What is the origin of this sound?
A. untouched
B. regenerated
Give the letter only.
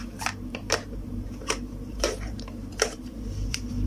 B